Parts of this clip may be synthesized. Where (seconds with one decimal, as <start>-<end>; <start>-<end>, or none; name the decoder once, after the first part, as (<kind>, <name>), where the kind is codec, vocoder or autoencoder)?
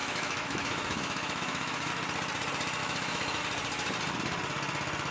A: 0.0-1.9 (autoencoder, DAC-VAE); 2.8-3.4